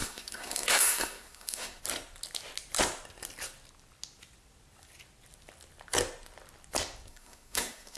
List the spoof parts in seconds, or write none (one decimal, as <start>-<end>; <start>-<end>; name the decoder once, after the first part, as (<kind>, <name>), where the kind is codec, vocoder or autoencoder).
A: 0.0-1.8 (codec, SNAC); 7.1-8.0